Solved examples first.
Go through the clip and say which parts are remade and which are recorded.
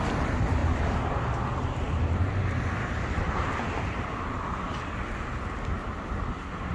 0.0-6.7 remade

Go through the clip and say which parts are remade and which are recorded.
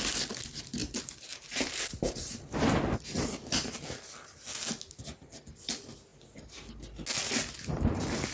0.0-0.8 recorded; 0.8-2.3 remade; 2.3-8.3 recorded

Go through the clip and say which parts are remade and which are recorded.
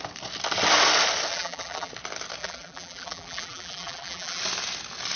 0.0-1.3 recorded; 1.3-1.9 remade; 1.9-2.4 recorded; 2.4-4.4 remade; 4.4-5.2 recorded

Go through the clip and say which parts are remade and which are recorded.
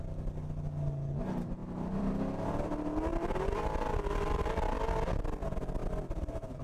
0.0-1.6 recorded; 1.6-2.1 remade; 2.1-3.1 recorded; 3.1-4.4 remade; 4.4-5.8 recorded; 5.8-6.6 remade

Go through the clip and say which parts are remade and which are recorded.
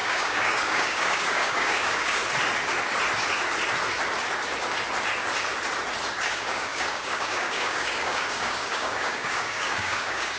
0.0-2.2 remade; 2.2-6.3 recorded; 6.3-10.4 remade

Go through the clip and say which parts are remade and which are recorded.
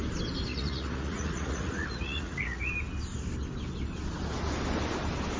0.0-0.5 recorded; 0.5-2.7 remade; 2.7-5.4 recorded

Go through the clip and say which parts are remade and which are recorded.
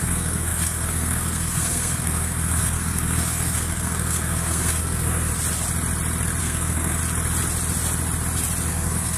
0.0-5.3 remade; 5.3-6.4 recorded; 6.4-7.0 remade; 7.0-8.7 recorded; 8.7-9.2 remade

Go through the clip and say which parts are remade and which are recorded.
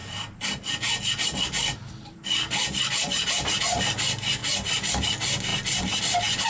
0.0-3.6 remade; 3.6-6.5 recorded